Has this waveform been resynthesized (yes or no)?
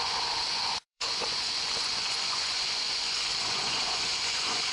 yes